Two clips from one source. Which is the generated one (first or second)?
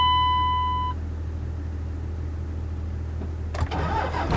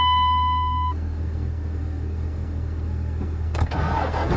second